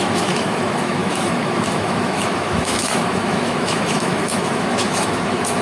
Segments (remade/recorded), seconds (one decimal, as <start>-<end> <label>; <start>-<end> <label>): 0.0-5.6 remade